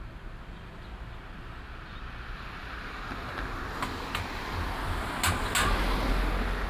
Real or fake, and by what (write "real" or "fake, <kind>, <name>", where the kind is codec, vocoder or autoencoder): real